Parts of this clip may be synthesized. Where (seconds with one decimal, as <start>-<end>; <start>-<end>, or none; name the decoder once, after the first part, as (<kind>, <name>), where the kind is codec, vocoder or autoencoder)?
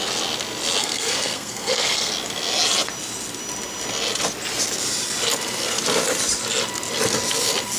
0.8-2.1 (codec, SNAC)